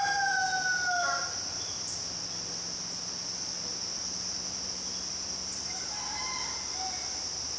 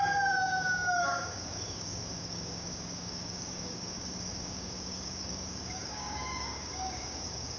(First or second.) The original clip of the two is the first